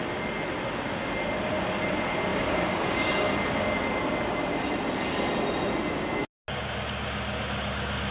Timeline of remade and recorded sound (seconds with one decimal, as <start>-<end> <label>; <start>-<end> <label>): 0.0-2.3 recorded; 2.3-3.1 remade; 3.1-8.1 recorded